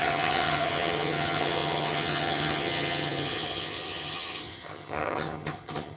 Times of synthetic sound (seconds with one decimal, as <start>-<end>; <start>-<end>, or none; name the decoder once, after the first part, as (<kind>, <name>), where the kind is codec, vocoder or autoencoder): 0.0-6.0 (vocoder, HiFi-GAN)